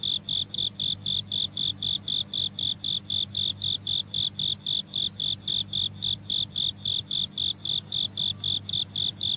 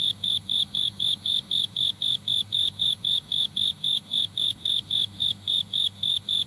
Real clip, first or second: first